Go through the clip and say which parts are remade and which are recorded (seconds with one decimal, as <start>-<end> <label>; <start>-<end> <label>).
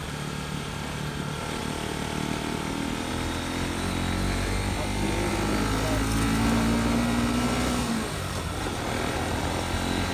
0.0-10.1 recorded